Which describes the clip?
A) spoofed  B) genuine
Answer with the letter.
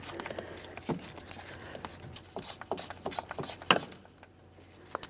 B